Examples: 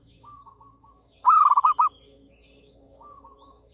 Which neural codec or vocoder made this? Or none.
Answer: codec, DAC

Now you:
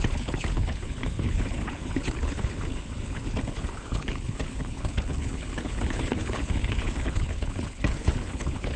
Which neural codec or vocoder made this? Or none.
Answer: codec, HILCodec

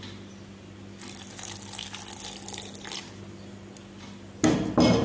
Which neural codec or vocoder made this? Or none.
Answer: none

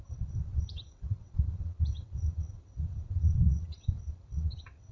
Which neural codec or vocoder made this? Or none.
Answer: vocoder, WaveNeXt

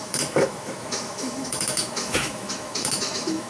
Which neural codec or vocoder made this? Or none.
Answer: autoencoder, DAC-VAE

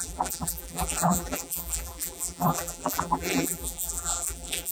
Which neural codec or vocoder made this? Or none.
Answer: vocoder, BigVGAN v2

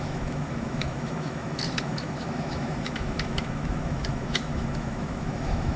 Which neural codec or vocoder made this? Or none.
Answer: autoencoder, DAC-VAE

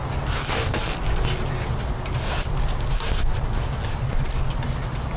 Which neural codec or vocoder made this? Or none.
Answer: none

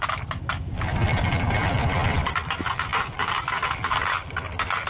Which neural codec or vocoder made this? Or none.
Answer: none